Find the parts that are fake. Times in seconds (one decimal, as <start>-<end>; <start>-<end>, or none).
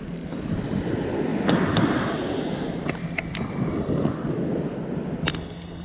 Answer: none